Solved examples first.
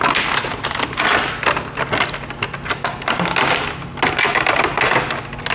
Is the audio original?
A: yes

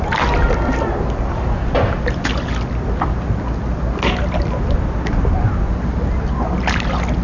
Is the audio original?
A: yes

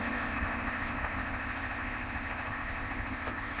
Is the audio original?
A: no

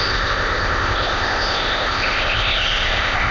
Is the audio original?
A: no